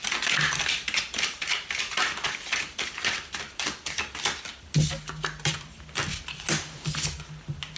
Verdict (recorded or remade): recorded